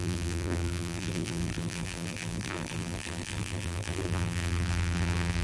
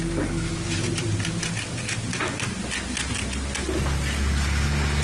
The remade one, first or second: first